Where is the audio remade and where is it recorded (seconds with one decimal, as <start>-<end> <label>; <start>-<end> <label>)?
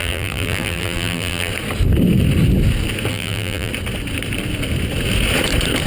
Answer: 0.0-1.5 remade; 1.5-3.1 recorded; 3.1-3.7 remade; 3.7-5.9 recorded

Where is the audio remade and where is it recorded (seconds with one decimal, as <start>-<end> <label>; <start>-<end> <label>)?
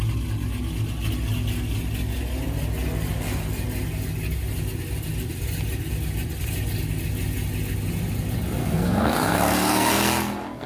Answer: 0.0-8.6 recorded; 8.6-10.7 remade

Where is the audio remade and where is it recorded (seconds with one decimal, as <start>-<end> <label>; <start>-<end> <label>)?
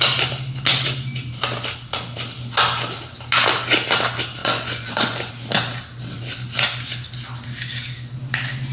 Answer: 0.0-4.4 recorded; 4.4-5.3 remade; 5.3-8.7 recorded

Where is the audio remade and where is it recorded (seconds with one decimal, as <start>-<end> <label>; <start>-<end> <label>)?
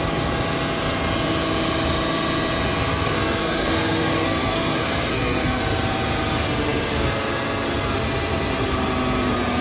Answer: 0.0-2.9 recorded; 2.9-5.6 remade; 5.6-9.6 recorded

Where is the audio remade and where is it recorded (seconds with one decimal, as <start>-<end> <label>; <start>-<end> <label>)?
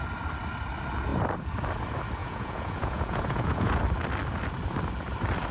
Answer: 0.0-2.2 recorded; 2.2-3.8 remade; 3.8-5.5 recorded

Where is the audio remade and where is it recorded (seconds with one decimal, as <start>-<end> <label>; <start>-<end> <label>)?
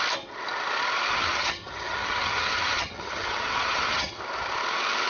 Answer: 0.0-1.1 recorded; 1.1-4.2 remade; 4.2-5.1 recorded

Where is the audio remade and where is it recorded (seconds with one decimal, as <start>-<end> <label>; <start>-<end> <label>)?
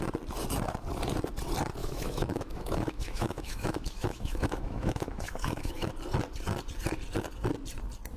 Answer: 0.0-1.8 recorded; 1.8-5.9 remade; 5.9-8.2 recorded